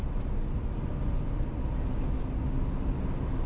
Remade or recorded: recorded